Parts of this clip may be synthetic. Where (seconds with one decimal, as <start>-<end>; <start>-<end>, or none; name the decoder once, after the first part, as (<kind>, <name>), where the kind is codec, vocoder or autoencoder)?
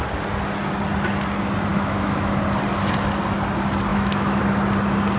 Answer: 1.7-2.4 (autoencoder, DAC-VAE); 3.9-4.4